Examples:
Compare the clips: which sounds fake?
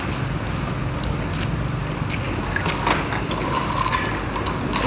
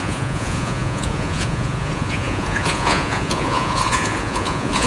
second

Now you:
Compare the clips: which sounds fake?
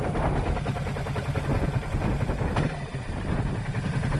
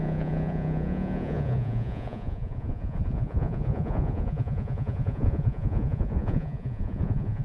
second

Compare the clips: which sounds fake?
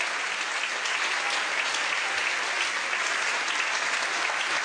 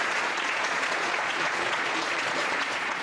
second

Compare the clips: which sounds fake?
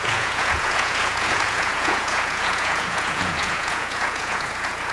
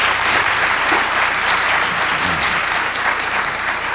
first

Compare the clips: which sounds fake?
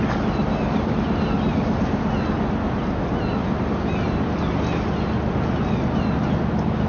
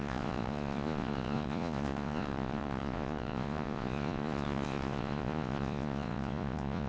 second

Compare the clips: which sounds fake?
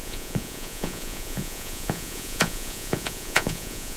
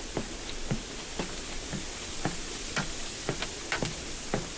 first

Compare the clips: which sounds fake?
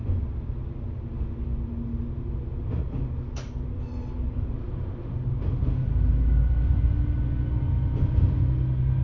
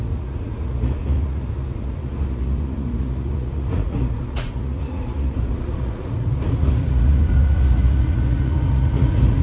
second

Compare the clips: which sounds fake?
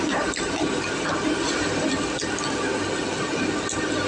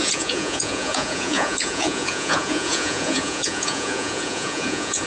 second